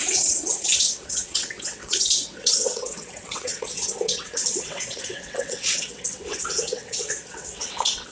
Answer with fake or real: fake